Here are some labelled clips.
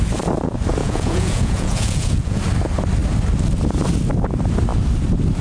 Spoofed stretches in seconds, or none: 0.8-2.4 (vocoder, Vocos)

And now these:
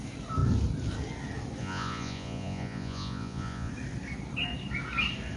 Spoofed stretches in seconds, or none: 1.6-3.7 (vocoder, Vocos)

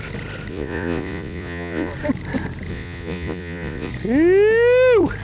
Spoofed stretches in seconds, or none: 0.5-1.9 (vocoder, Vocos); 2.7-3.9

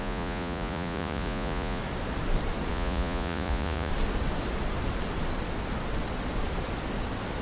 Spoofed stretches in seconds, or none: 0.0-1.8 (vocoder, Vocos); 2.7-3.9

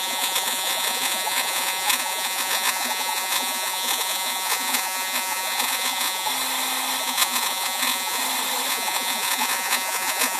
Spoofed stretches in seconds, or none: 0.0-6.3 (vocoder, Vocos); 7.0-8.2; 8.7-10.4

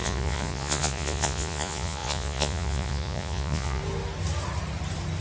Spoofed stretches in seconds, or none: 0.0-3.8 (vocoder, Vocos)